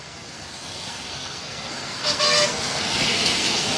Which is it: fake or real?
fake